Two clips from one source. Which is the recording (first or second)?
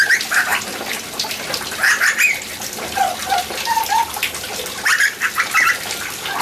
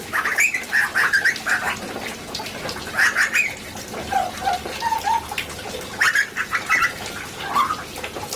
second